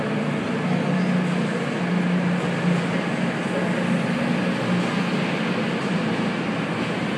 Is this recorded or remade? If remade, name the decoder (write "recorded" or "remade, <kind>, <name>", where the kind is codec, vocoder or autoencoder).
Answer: recorded